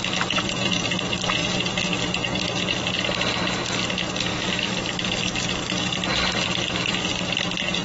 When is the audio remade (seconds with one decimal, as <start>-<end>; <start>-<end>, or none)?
4.3-6.0

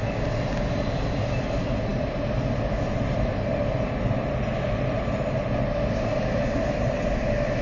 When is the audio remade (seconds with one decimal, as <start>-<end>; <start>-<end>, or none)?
none

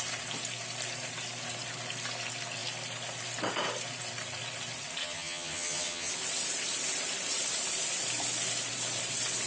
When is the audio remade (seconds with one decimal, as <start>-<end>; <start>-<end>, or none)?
5.0-6.1

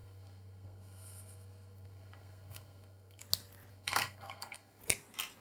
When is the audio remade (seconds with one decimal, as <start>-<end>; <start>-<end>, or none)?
0.0-3.2; 3.7-4.8

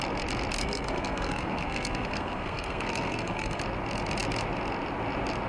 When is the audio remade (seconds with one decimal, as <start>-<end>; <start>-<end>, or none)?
0.6-3.6

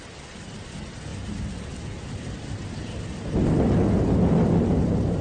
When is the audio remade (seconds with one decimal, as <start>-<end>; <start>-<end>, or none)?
none

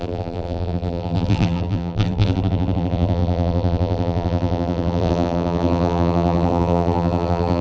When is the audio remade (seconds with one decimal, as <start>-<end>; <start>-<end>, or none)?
0.0-7.6

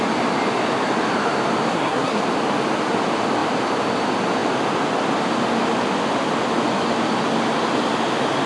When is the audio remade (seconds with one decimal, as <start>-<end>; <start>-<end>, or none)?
1.7-2.2